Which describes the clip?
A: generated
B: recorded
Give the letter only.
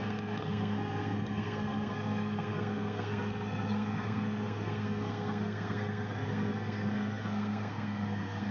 A